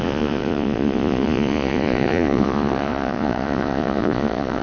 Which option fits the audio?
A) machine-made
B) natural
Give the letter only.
A